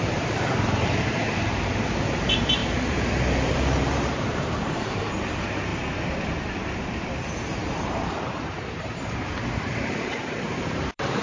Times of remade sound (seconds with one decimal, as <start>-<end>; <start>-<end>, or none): 0.0-11.2